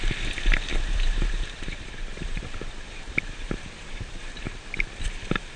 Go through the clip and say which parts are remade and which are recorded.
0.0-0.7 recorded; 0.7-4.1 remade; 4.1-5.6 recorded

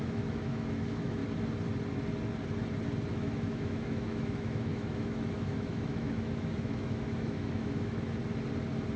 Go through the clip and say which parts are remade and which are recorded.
0.0-1.2 remade; 1.2-3.1 recorded; 3.1-8.2 remade; 8.2-9.0 recorded